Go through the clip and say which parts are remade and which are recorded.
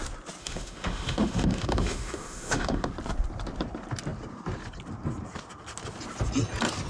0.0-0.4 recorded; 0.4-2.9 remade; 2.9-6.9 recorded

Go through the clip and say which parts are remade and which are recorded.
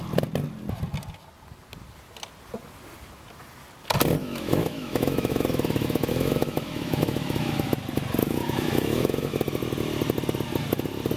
0.0-4.2 recorded; 4.2-7.7 remade; 7.7-8.2 recorded; 8.2-9.4 remade; 9.4-11.2 recorded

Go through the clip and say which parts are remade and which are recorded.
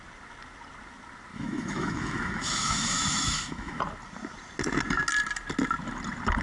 0.0-1.3 recorded; 1.3-3.8 remade; 3.8-6.4 recorded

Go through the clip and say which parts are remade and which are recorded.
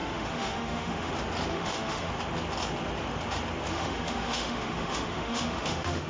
0.0-1.1 remade; 1.1-1.5 recorded; 1.5-2.1 remade; 2.1-3.7 recorded; 3.7-6.1 remade